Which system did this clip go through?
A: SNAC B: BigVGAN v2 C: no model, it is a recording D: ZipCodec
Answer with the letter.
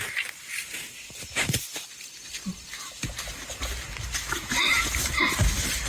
C